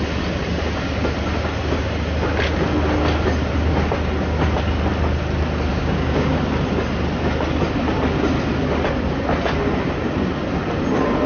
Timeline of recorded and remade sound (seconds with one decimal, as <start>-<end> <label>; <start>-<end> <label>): 0.0-5.7 recorded; 5.7-6.4 remade; 6.4-11.3 recorded